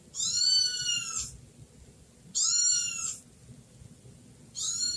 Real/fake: real